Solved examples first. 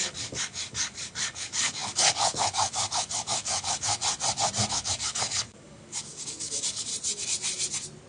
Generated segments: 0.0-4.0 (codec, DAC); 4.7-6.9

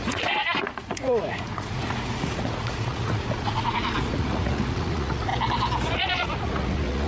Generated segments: 0.0-5.3 (vocoder, Vocos); 5.9-7.1